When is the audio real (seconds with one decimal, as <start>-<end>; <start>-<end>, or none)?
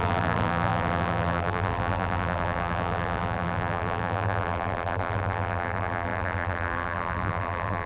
none